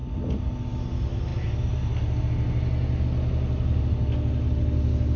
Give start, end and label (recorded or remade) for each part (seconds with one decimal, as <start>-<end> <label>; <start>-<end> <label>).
0.0-5.2 recorded